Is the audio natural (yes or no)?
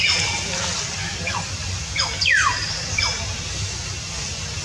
yes